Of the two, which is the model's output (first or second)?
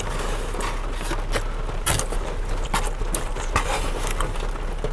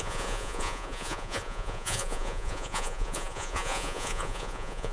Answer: second